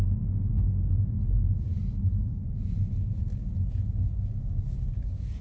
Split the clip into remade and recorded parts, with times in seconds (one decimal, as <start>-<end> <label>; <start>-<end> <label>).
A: 0.0-1.7 recorded; 1.7-2.9 remade; 2.9-5.4 recorded